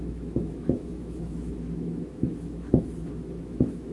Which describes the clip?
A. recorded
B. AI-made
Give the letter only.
B